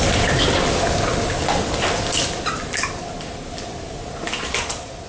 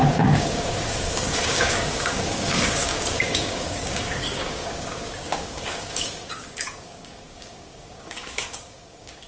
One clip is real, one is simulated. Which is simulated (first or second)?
second